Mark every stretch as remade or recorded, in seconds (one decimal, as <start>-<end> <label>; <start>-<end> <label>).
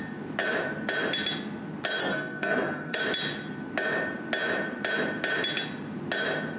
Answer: 0.0-2.0 recorded; 2.0-3.0 remade; 3.0-6.6 recorded